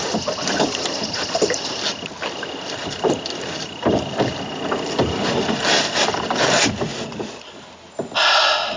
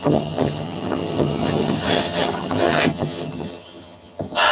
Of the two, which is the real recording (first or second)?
first